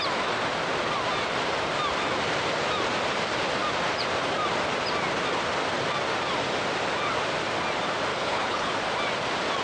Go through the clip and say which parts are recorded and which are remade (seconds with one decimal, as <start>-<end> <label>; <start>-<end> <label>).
0.0-8.1 recorded; 8.1-8.7 remade; 8.7-9.6 recorded

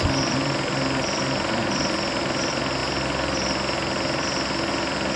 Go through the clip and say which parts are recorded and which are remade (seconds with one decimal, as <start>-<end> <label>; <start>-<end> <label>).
0.0-5.2 recorded